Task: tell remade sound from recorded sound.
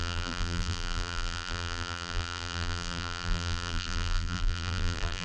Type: remade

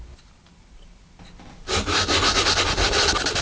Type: recorded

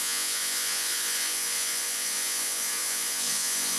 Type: remade